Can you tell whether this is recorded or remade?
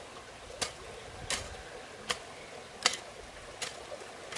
recorded